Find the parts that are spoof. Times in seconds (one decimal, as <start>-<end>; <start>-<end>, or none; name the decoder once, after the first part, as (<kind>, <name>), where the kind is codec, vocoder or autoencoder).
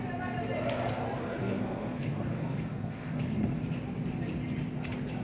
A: 1.4-3.6 (codec, SNAC)